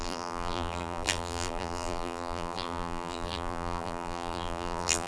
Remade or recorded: remade